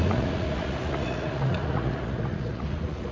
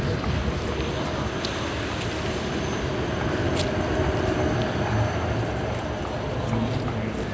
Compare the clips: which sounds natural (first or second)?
second